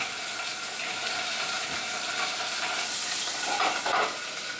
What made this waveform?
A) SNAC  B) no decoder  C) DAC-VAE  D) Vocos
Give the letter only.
B